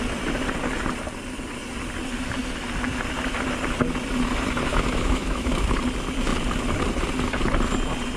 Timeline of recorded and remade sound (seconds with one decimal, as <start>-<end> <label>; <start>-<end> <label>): 0.0-4.7 recorded; 4.7-5.5 remade; 5.5-8.2 recorded